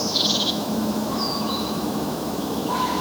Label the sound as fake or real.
fake